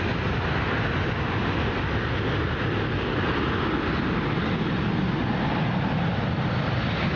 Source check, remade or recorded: recorded